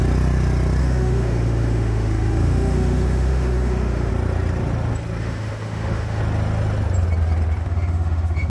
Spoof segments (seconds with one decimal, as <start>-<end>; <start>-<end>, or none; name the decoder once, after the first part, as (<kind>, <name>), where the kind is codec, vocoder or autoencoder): 0.8-4.1 (autoencoder, DAC-VAE); 5.2-6.2; 7.6-8.5